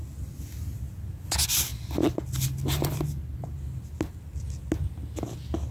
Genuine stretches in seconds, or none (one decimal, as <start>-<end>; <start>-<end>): 0.0-5.7